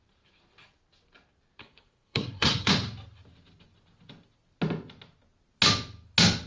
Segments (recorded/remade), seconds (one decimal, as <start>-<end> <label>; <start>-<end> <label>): 0.0-1.6 recorded; 1.6-2.7 remade; 2.7-6.5 recorded